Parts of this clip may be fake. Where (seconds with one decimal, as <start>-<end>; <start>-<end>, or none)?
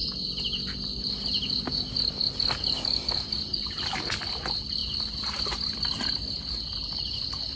none